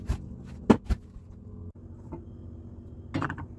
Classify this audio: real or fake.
real